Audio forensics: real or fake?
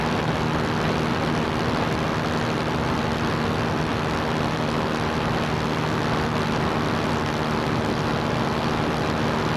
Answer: real